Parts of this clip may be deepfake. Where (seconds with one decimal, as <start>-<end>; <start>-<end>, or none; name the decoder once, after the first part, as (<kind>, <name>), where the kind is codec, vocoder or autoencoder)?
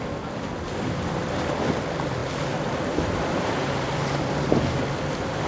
none